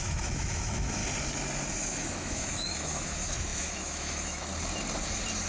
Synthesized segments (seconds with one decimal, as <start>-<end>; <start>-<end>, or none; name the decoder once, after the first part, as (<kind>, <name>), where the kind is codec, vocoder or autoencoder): 0.0-1.0 (autoencoder, DAC-VAE); 1.7-4.5